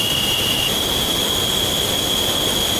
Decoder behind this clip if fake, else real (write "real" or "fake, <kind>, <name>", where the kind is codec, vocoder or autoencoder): real